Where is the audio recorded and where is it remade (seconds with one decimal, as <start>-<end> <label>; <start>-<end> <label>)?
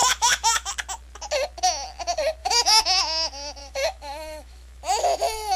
0.0-0.7 remade; 0.7-2.4 recorded; 2.4-3.0 remade; 3.0-3.6 recorded; 3.6-4.8 remade; 4.8-5.6 recorded